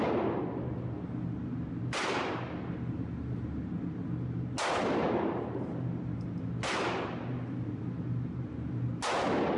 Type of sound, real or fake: real